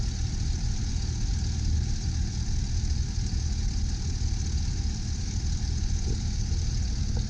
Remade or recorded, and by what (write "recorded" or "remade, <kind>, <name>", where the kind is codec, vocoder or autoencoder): recorded